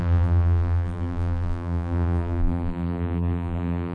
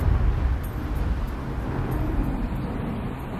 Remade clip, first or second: first